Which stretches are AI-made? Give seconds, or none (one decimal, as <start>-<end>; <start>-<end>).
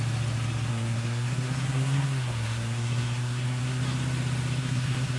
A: 0.7-3.8; 4.6-5.2